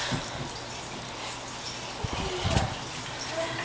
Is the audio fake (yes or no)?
no